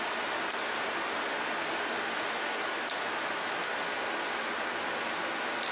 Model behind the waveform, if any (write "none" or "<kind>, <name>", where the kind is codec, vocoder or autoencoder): none